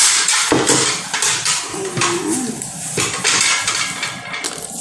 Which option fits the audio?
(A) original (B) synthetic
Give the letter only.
A